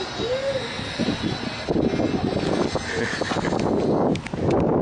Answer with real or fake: real